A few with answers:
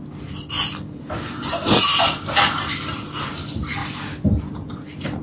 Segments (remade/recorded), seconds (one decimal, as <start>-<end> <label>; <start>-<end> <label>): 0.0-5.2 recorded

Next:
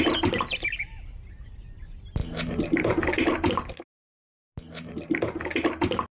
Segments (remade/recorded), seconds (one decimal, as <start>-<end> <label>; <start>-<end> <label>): 0.0-6.2 recorded

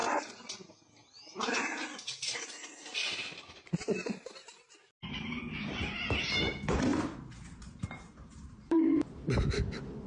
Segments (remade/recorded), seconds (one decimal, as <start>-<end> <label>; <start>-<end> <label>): 0.0-1.3 recorded; 1.3-5.4 remade; 5.4-6.9 recorded; 6.9-9.1 remade; 9.1-10.1 recorded

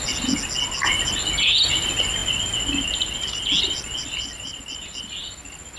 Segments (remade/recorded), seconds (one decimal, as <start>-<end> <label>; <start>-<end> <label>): 0.0-5.8 recorded

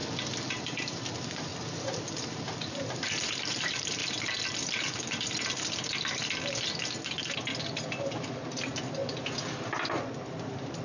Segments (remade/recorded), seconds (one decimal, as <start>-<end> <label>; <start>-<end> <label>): 0.0-0.5 recorded; 0.5-1.5 remade; 1.5-2.3 recorded; 2.3-4.0 remade; 4.0-8.1 recorded; 8.1-9.0 remade; 9.0-10.4 recorded; 10.4-10.8 remade

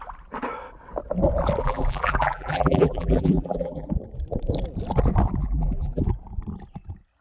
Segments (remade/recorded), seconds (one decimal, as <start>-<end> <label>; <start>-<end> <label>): 0.0-1.6 recorded; 1.6-3.9 remade; 3.9-5.4 recorded; 5.4-6.0 remade; 6.0-7.2 recorded

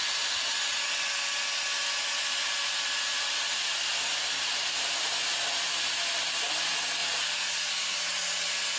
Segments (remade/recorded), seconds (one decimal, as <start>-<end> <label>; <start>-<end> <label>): 0.0-7.0 recorded; 7.0-8.1 remade; 8.1-8.8 recorded

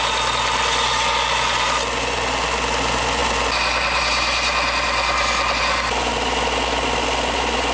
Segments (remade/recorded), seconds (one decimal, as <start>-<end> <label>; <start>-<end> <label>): 0.0-7.7 recorded